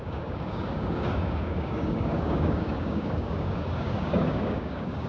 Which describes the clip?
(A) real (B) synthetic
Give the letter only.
B